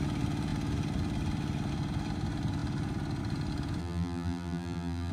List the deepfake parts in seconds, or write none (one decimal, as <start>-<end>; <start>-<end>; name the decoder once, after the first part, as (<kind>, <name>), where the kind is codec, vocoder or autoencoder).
3.8-5.1 (vocoder, BigVGAN v2)